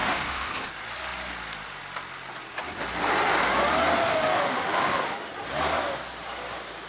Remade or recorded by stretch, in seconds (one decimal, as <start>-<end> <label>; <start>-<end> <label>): 0.0-0.7 remade; 0.7-4.0 recorded; 4.0-5.3 remade; 5.3-6.9 recorded